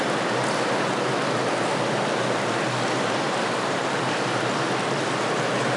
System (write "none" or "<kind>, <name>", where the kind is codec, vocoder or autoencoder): none